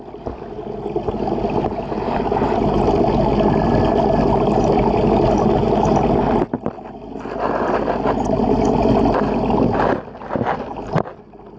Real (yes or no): yes